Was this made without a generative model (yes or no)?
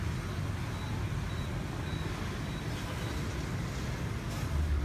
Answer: yes